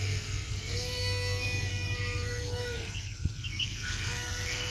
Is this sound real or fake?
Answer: fake